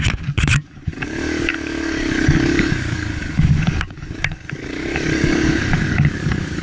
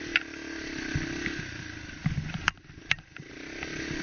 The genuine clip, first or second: second